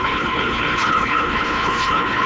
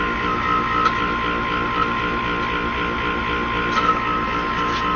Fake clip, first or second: first